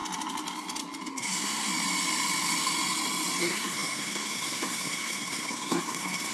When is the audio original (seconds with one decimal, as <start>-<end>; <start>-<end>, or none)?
0.0-1.1; 1.7-3.4

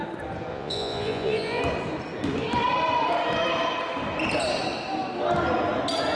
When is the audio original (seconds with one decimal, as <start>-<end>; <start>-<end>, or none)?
0.0-0.5; 1.6-6.2

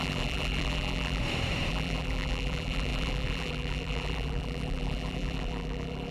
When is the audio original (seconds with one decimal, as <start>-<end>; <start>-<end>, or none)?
1.2-1.7